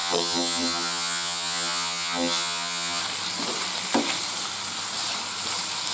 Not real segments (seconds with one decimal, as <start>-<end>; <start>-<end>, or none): 0.0-3.0